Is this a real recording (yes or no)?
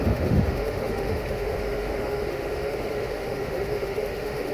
no